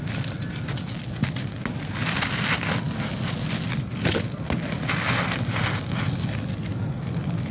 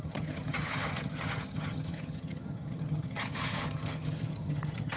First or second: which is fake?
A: second